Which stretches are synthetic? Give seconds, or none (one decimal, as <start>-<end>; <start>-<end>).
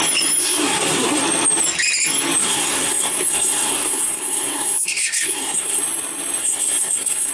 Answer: 0.4-1.2; 2.4-5.8; 6.4-7.3